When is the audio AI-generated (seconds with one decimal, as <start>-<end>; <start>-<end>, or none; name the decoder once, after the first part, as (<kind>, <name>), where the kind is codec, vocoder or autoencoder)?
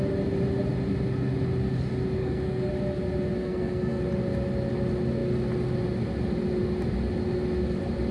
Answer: 2.2-2.7 (codec, SNAC); 3.4-4.0